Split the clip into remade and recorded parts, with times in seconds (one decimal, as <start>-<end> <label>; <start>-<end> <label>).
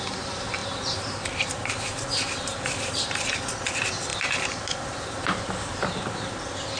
0.0-0.6 recorded; 0.6-1.7 remade; 1.7-2.5 recorded; 2.5-3.3 remade; 3.3-4.1 recorded; 4.1-5.9 remade; 5.9-6.8 recorded